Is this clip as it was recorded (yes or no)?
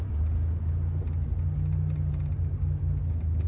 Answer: yes